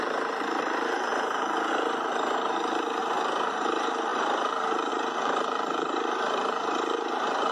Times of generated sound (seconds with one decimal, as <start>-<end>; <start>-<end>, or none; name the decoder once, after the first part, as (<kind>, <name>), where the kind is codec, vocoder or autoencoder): 0.0-3.0 (vocoder, BigVGAN v2); 3.5-7.5